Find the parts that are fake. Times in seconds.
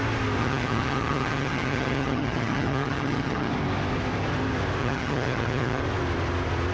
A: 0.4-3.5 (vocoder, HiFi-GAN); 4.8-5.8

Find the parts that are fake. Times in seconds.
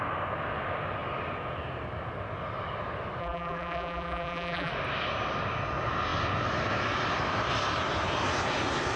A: 3.2-4.7 (vocoder, BigVGAN v2)